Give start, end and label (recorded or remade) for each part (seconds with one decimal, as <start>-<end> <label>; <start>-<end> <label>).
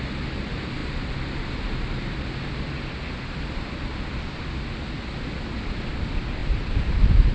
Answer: 0.0-6.4 recorded; 6.4-7.3 remade